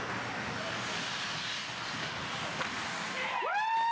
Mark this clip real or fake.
real